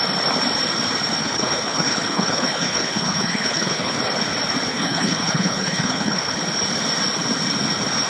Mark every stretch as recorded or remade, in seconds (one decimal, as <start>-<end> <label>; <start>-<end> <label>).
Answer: 0.0-1.2 recorded; 1.2-4.0 remade; 4.0-4.7 recorded; 4.7-6.3 remade; 6.3-8.1 recorded